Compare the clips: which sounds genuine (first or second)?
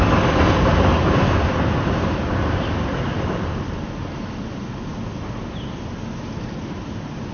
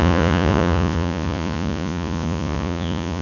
first